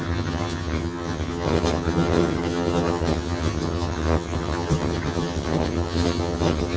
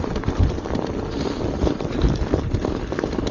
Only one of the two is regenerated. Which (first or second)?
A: first